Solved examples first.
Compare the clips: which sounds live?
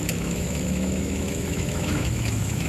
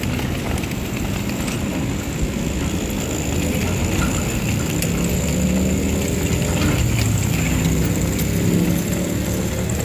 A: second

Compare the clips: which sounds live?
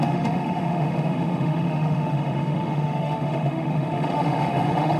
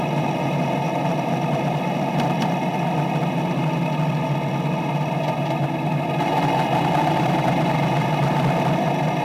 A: second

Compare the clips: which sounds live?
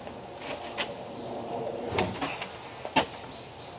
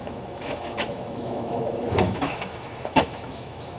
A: first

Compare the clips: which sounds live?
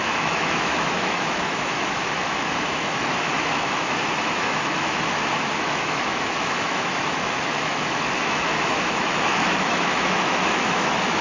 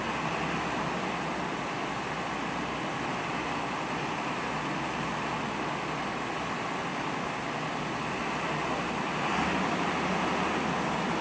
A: second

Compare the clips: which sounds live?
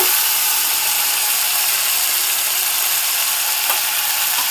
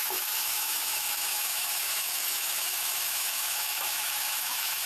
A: first